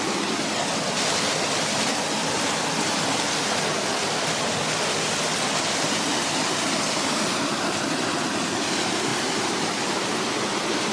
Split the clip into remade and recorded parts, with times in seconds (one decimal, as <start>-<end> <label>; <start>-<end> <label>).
0.0-9.1 recorded; 9.1-9.8 remade; 9.8-10.9 recorded